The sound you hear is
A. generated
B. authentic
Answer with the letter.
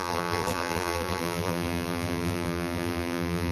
A